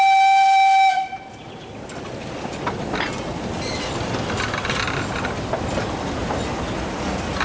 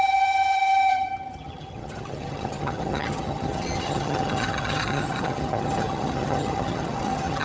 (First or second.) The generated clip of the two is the second